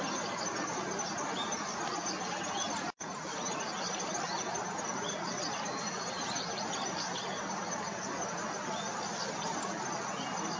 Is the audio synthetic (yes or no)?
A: no